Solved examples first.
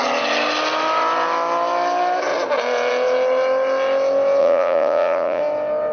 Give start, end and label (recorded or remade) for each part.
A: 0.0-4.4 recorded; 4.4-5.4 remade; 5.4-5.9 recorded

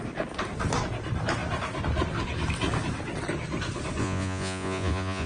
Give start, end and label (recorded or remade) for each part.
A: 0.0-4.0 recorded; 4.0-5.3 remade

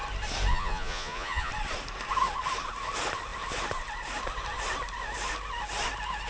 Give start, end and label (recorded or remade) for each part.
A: 0.0-0.5 recorded; 0.5-1.5 remade; 1.5-6.3 recorded